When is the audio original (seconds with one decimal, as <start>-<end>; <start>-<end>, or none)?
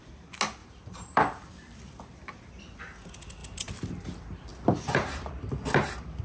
0.0-0.6; 1.4-4.5; 5.1-6.2